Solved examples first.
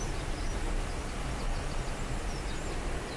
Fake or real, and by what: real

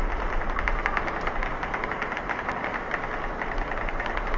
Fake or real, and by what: real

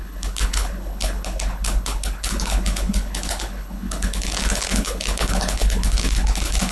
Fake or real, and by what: fake, codec, HILCodec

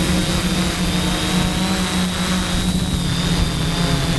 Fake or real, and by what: real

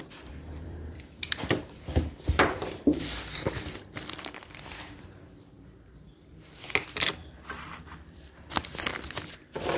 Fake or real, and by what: fake, vocoder, BigVGAN v2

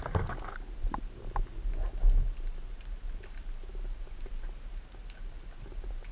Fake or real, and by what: real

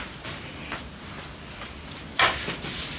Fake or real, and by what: real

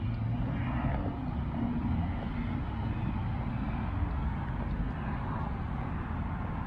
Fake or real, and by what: real